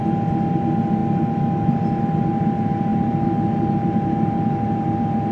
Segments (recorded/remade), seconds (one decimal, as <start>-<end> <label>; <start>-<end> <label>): 0.0-5.3 recorded

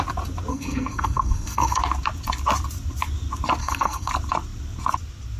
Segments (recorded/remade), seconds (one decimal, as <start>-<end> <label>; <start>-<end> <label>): 0.0-0.5 recorded; 0.5-1.8 remade; 1.8-3.6 recorded; 3.6-4.1 remade; 4.1-5.4 recorded

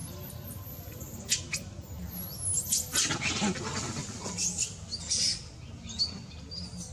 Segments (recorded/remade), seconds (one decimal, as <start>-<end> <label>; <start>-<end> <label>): 0.0-6.9 recorded

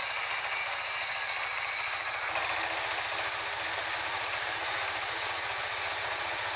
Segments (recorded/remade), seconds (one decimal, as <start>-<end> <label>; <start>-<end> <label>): 0.0-4.0 recorded; 4.0-6.6 remade

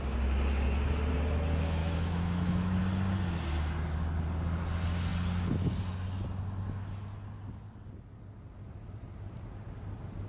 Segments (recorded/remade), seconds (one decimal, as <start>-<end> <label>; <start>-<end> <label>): 0.0-1.8 recorded; 1.8-2.8 remade; 2.8-10.3 recorded